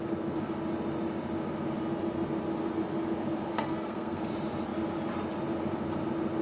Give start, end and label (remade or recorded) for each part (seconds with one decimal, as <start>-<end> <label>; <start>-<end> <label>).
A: 0.0-3.5 recorded; 3.5-4.2 remade; 4.2-6.4 recorded